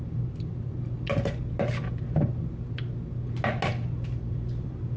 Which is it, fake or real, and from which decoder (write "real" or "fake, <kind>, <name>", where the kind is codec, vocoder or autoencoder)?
real